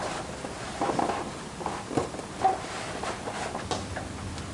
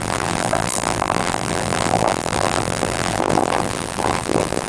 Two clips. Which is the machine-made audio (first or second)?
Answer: second